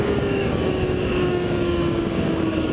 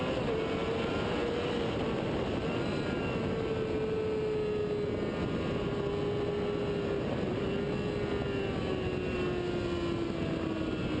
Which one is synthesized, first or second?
first